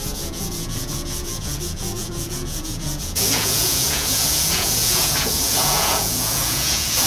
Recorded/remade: remade